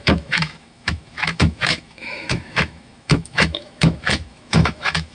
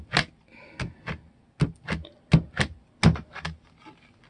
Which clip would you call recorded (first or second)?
second